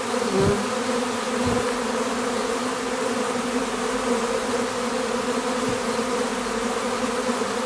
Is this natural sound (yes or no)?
yes